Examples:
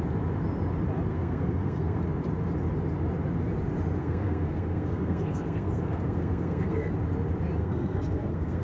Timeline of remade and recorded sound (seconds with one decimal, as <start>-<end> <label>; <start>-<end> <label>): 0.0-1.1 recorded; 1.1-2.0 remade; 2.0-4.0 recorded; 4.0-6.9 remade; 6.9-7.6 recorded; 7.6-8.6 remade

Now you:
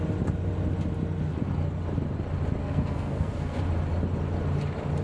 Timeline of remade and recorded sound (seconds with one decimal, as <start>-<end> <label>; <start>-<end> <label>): 0.0-2.6 recorded; 2.6-3.6 remade; 3.6-5.0 recorded

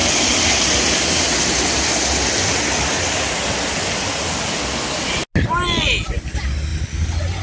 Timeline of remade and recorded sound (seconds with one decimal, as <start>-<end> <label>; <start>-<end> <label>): 0.0-7.4 recorded